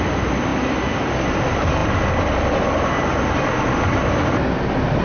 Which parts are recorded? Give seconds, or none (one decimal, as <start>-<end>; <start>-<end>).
0.0-5.0